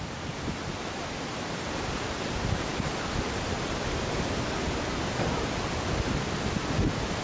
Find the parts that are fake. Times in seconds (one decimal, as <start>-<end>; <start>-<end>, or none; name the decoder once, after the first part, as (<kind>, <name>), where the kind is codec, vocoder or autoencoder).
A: 0.0-7.2 (vocoder, BigVGAN v2)